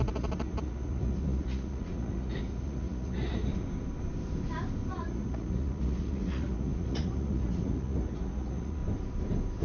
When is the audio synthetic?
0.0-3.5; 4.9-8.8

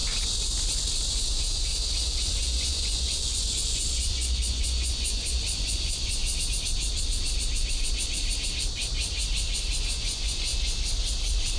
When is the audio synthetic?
1.1-1.7; 2.3-6.2; 9.8-10.5